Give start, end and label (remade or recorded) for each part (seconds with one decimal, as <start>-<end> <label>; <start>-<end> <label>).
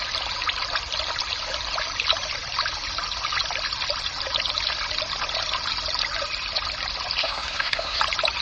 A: 0.0-7.2 recorded; 7.2-8.0 remade; 8.0-8.4 recorded